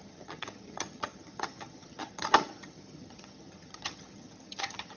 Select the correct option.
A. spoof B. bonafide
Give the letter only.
A